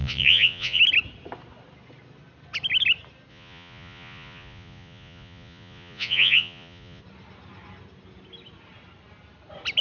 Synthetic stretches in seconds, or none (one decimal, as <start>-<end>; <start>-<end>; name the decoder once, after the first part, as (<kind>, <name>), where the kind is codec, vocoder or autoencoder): 0.0-0.8 (vocoder, Vocos); 3.3-7.0